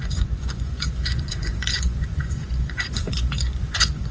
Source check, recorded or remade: remade